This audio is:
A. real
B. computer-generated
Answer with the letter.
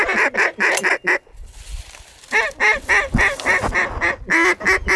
A